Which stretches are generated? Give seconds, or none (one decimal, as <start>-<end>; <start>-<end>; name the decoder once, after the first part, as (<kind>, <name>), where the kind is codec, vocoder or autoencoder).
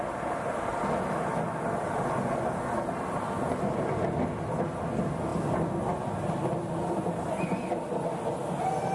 none